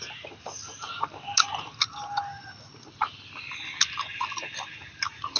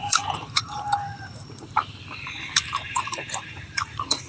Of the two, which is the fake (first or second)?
second